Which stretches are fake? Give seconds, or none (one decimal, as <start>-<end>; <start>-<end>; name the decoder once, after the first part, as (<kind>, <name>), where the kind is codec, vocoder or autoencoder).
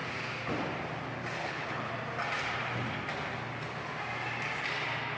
1.4-1.9 (codec, HILCodec)